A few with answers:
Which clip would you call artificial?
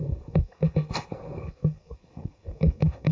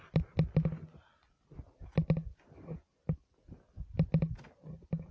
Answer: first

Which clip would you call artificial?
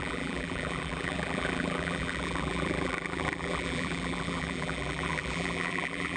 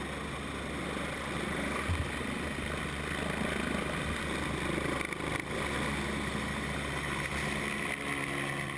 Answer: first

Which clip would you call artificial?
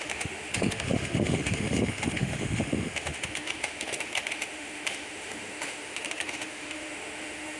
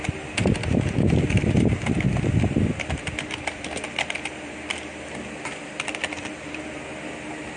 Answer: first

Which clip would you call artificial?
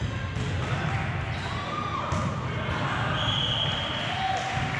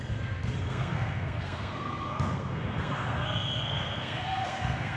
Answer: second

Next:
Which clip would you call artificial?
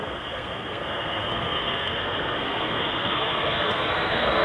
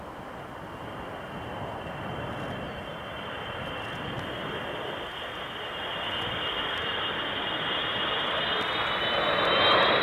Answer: first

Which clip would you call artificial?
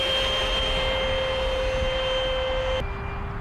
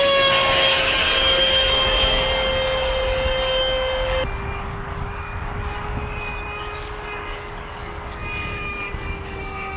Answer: second